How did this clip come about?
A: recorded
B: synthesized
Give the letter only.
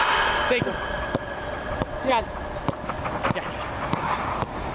A